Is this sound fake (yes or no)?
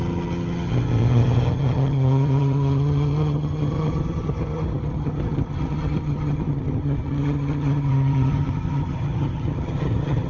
yes